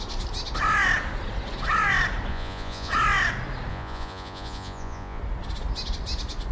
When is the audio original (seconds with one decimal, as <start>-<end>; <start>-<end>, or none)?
0.0-2.3; 2.9-3.7; 5.2-6.5